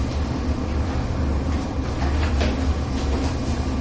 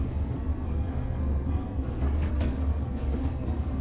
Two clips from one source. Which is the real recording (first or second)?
first